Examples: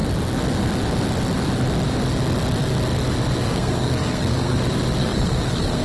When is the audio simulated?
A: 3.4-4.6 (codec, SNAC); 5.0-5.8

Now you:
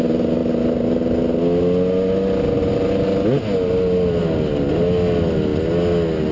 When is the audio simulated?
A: none

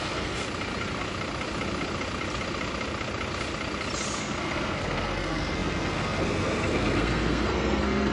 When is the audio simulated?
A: 0.0-0.4 (codec, SNAC); 4.2-8.1

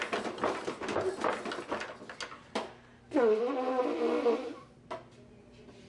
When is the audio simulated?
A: none

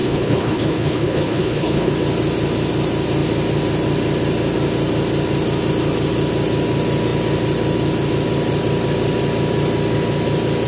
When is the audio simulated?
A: 0.0-1.9 (codec, HILCodec)

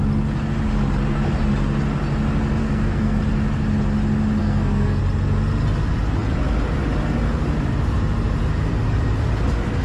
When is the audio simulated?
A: 2.6-3.2 (codec, SNAC); 4.4-5.0

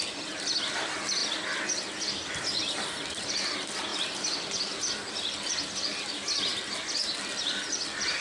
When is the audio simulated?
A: 0.0-1.2 (vocoder, BigVGAN v2); 2.3-6.5; 7.7-8.2